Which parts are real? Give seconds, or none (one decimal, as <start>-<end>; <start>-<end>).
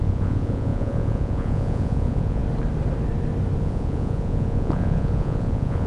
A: 2.4-3.6